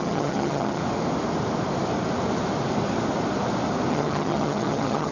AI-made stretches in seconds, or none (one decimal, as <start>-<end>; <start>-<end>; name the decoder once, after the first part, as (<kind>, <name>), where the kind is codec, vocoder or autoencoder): 0.0-0.8 (vocoder, HiFi-GAN); 3.9-5.1